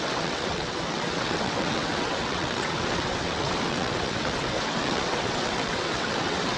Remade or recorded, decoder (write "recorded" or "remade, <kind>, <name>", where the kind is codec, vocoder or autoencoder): remade, vocoder, WaveNeXt